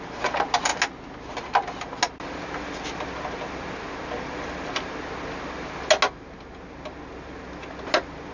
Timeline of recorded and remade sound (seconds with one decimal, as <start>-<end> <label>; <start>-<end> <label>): 0.0-8.3 recorded